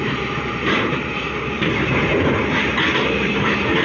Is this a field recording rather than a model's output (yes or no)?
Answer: no